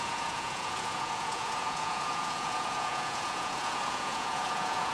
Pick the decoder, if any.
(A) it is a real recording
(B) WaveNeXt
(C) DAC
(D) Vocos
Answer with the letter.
D